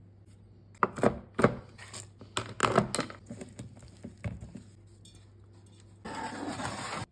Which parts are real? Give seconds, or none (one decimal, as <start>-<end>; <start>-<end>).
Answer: 0.0-7.1